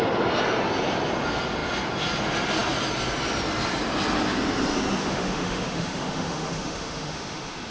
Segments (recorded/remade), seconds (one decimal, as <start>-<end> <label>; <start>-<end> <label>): 0.0-5.0 recorded; 5.0-7.7 remade